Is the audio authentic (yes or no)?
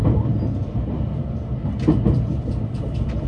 yes